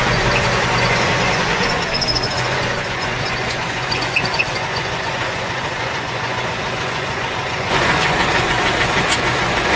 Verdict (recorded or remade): remade